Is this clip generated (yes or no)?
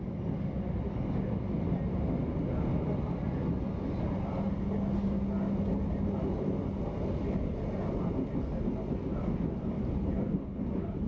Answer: no